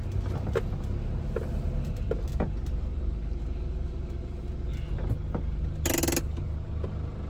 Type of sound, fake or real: real